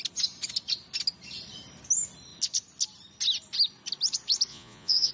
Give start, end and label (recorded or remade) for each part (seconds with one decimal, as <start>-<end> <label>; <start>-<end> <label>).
0.0-4.5 recorded; 4.5-5.1 remade